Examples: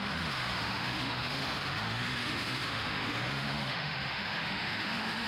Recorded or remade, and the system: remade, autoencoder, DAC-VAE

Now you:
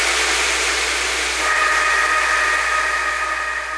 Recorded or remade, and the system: recorded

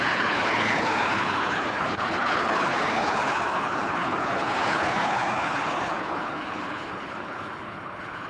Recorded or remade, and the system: remade, codec, HILCodec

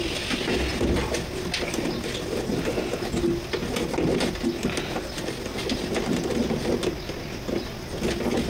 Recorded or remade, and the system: recorded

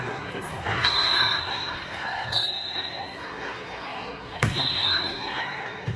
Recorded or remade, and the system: remade, codec, SNAC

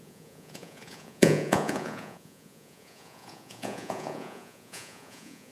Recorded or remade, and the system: remade, vocoder, Vocos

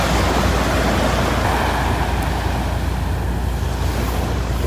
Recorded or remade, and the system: recorded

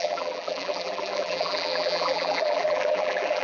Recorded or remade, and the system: remade, vocoder, BigVGAN v2